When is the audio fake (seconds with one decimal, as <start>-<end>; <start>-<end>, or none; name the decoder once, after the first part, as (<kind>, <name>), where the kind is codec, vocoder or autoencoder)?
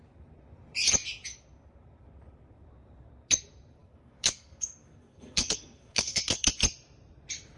3.8-6.5 (codec, SNAC)